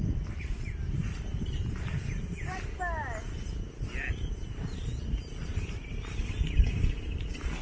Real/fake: real